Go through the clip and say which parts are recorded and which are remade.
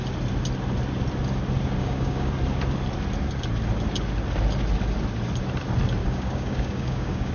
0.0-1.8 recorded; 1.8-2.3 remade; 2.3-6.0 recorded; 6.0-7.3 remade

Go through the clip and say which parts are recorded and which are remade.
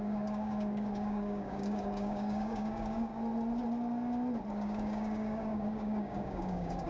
0.0-3.1 remade; 3.1-4.5 recorded; 4.5-6.9 remade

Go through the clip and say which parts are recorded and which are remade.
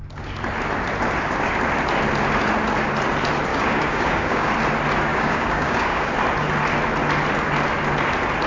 0.0-3.5 recorded; 3.5-4.5 remade; 4.5-5.1 recorded; 5.1-6.1 remade; 6.1-8.5 recorded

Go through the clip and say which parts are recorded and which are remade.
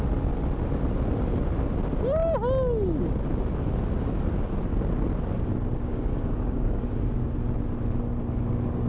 0.0-5.9 recorded; 5.9-7.3 remade; 7.3-8.9 recorded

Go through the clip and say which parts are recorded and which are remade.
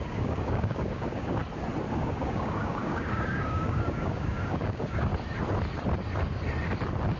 0.0-1.4 remade; 1.4-1.9 recorded; 1.9-5.1 remade; 5.1-7.2 recorded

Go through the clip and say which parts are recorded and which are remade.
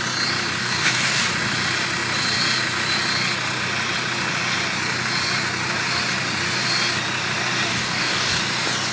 0.0-0.6 recorded; 0.6-1.2 remade; 1.2-7.7 recorded; 7.7-8.4 remade; 8.4-8.9 recorded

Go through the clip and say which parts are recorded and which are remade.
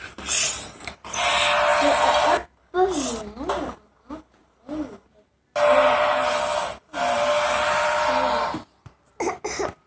0.0-9.9 recorded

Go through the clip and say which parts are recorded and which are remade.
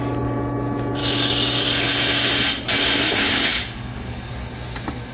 0.0-1.0 recorded; 1.0-1.9 remade; 1.9-3.5 recorded; 3.5-4.3 remade; 4.3-5.1 recorded